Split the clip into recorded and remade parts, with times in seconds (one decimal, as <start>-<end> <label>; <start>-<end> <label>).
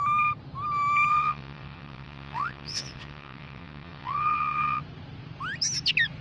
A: 0.0-1.1 recorded; 1.1-4.8 remade; 4.8-6.2 recorded